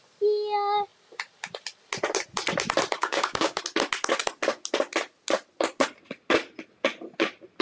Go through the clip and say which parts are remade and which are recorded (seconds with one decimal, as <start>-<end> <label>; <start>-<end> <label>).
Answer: 0.0-3.0 recorded; 3.0-3.6 remade; 3.6-7.6 recorded

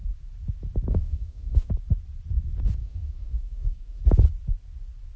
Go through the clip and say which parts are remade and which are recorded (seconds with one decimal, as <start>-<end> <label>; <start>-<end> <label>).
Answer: 0.0-0.9 recorded; 0.9-1.7 remade; 1.7-2.8 recorded; 2.8-4.0 remade; 4.0-5.2 recorded

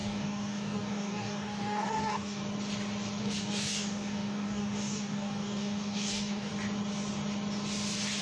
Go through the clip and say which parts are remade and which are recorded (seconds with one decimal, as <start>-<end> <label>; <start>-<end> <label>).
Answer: 0.0-2.4 remade; 2.4-3.2 recorded; 3.2-6.5 remade; 6.5-8.2 recorded

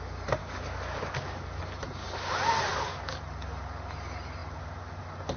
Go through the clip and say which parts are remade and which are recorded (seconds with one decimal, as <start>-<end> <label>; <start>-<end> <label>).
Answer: 0.0-0.4 recorded; 0.4-1.6 remade; 1.6-2.7 recorded; 2.7-3.2 remade; 3.2-5.4 recorded

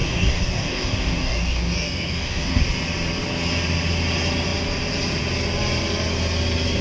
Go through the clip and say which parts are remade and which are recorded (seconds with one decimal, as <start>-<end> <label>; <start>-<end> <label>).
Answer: 0.0-2.6 remade; 2.6-6.8 recorded